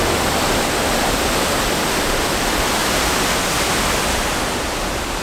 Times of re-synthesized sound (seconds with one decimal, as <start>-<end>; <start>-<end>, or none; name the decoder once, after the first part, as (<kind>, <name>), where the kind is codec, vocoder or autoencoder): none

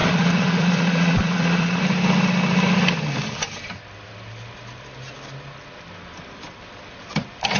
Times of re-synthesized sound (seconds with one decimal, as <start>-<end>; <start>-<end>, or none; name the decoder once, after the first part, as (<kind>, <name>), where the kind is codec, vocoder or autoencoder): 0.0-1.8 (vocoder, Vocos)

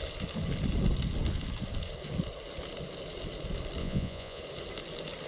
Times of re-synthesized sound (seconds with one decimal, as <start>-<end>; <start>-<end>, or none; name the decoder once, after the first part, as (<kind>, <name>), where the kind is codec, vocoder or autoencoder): 3.8-4.4 (vocoder, Vocos)

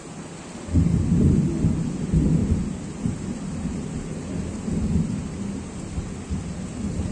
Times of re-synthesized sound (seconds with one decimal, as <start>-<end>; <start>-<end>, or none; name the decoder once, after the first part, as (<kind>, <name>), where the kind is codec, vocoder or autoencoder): none

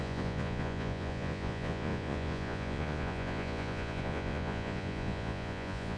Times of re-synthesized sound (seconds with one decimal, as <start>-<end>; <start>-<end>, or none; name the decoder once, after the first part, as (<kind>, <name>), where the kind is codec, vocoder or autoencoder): 0.0-6.0 (vocoder, Vocos)

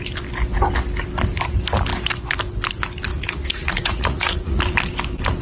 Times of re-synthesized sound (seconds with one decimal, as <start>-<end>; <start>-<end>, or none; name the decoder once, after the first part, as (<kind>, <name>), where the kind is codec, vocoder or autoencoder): 3.1-4.6 (vocoder, Vocos)